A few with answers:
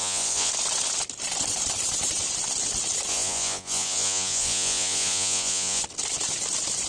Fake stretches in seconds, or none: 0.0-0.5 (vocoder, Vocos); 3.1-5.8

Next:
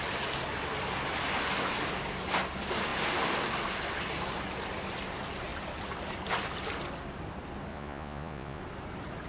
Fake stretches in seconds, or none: 7.7-8.6 (vocoder, Vocos)

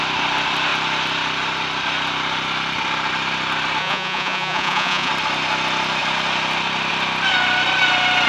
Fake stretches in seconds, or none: 3.8-5.1 (vocoder, Vocos)

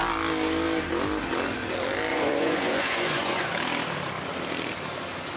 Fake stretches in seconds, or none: 2.1-3.5 (vocoder, Vocos)

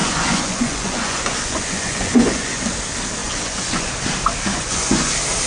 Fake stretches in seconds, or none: 0.0-2.6 (vocoder, Vocos); 3.2-3.9; 4.5-5.1

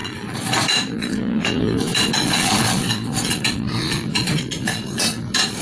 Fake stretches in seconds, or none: 0.0-5.6 (vocoder, Vocos)

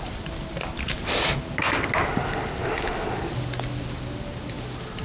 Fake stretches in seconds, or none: none

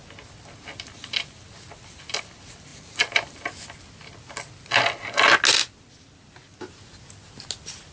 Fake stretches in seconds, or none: none